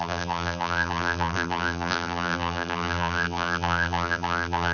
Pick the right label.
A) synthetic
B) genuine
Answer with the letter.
A